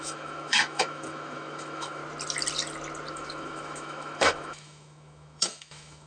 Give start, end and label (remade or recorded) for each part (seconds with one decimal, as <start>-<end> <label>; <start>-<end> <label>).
0.0-2.0 remade; 2.0-3.1 recorded; 3.1-6.1 remade